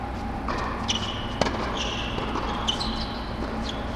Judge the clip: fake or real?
real